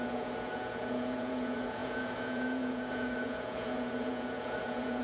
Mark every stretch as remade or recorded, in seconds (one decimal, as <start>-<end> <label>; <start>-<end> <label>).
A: 0.0-5.0 remade